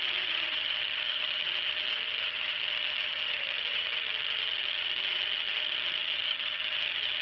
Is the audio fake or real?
fake